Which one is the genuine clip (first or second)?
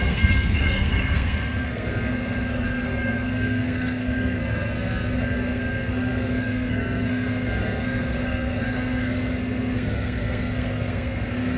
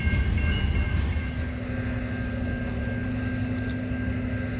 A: second